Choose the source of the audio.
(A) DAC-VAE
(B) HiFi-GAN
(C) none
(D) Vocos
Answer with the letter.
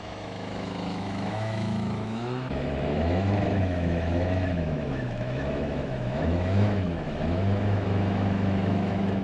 A